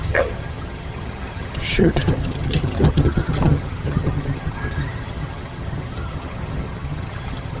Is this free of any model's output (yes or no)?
no